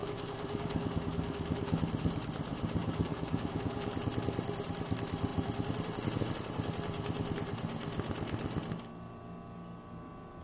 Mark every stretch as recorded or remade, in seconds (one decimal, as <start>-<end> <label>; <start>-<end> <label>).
0.0-1.8 remade; 1.8-2.8 recorded; 2.8-3.9 remade; 3.9-10.4 recorded